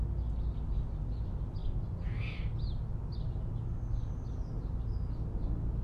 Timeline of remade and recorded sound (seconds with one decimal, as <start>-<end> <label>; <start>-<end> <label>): 0.0-5.8 recorded